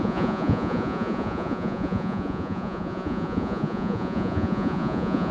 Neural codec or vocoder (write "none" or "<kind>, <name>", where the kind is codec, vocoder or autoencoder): vocoder, Vocos